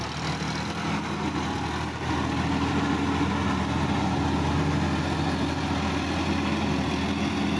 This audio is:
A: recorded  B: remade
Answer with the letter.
A